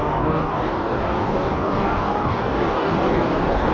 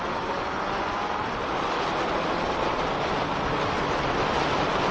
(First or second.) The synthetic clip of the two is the first